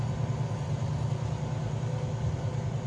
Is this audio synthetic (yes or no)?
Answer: no